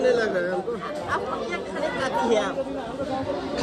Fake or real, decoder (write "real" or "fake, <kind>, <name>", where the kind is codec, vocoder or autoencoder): real